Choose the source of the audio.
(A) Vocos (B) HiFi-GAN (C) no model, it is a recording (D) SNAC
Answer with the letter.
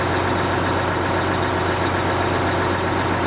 C